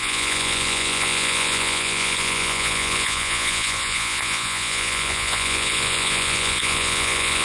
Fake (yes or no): yes